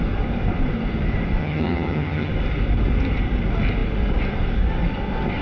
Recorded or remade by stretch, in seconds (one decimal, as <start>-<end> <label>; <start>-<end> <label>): 0.0-1.4 recorded; 1.4-2.3 remade; 2.3-5.4 recorded